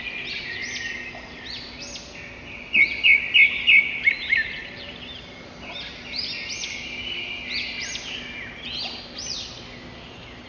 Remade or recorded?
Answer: recorded